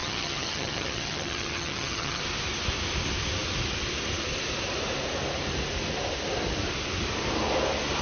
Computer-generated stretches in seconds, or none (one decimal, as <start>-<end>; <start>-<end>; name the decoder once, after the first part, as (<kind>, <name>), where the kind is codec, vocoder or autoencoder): 0.0-2.2 (vocoder, HiFi-GAN)